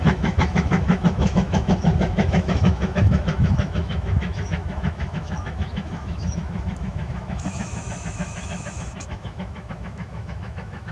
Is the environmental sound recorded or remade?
remade